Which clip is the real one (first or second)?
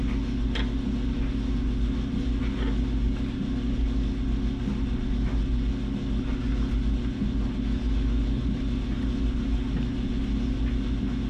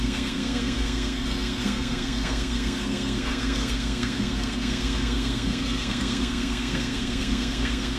first